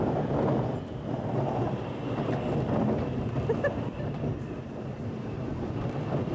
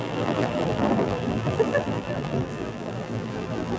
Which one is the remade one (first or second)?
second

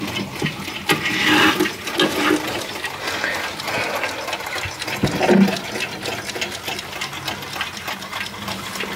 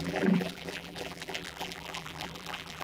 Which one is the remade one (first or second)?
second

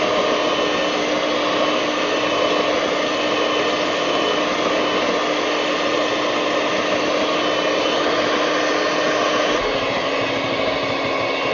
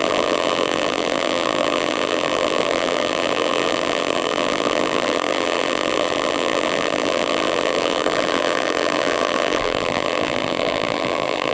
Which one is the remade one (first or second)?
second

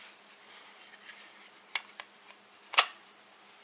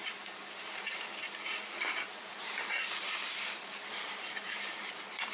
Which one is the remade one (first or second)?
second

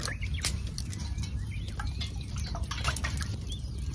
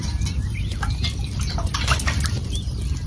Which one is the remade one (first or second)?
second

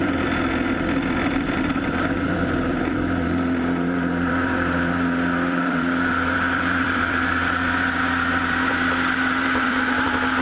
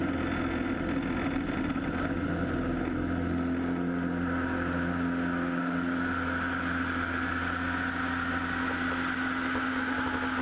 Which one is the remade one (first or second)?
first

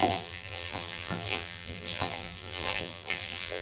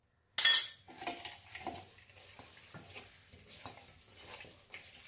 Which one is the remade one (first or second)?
first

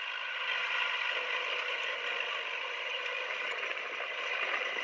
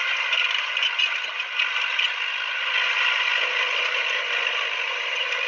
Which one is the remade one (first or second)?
first